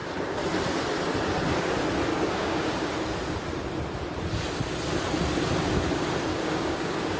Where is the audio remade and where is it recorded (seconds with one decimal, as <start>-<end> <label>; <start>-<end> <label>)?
0.0-2.1 recorded; 2.1-2.9 remade; 2.9-6.3 recorded; 6.3-7.2 remade